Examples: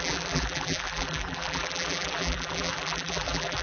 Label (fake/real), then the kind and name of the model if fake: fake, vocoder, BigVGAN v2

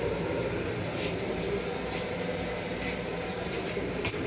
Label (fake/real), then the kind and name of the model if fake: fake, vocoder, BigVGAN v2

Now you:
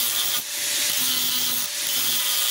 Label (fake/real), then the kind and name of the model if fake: real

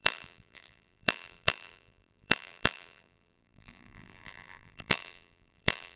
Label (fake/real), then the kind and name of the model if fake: fake, vocoder, BigVGAN v2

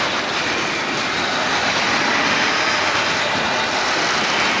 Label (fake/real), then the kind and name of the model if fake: real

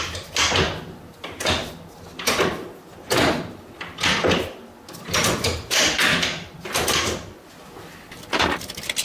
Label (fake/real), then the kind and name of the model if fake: fake, vocoder, BigVGAN v2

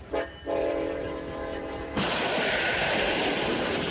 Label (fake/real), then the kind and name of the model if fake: fake, vocoder, BigVGAN v2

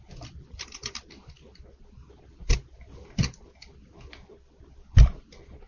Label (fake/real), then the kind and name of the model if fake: real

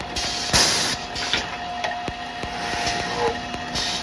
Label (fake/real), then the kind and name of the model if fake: real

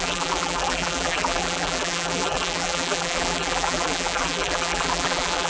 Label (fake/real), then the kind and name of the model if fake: fake, vocoder, BigVGAN v2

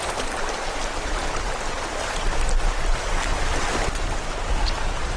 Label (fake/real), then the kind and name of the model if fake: real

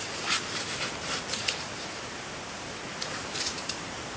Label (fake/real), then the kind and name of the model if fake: fake, vocoder, BigVGAN v2